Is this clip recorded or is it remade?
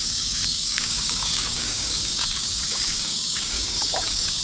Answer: remade